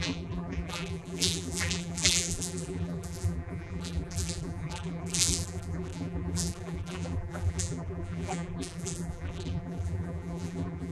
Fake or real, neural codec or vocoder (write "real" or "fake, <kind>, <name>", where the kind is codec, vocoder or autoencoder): fake, vocoder, BigVGAN v2